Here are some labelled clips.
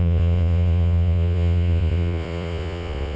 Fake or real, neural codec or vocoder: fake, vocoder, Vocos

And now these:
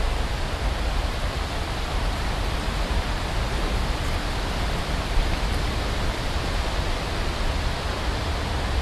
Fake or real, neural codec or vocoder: fake, vocoder, BigVGAN v2